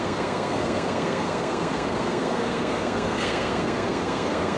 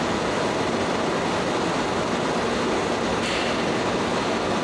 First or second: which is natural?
second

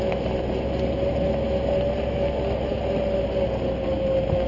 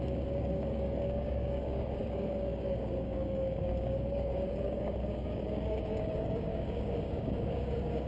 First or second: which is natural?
first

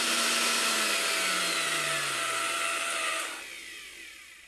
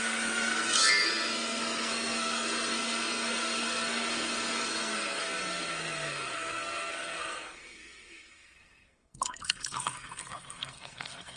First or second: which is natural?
first